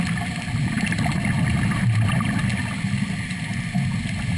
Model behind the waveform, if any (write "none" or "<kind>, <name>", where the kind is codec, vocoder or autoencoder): none